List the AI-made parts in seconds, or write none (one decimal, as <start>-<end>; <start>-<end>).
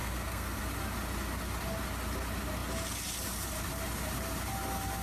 0.0-0.6